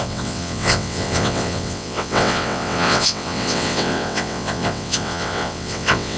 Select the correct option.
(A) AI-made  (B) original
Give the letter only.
A